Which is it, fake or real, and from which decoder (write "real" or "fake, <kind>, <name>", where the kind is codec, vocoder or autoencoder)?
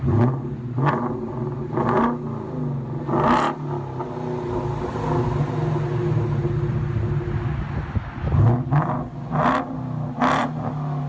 real